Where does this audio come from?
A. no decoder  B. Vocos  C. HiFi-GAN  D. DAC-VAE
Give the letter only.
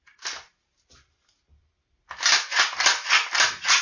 A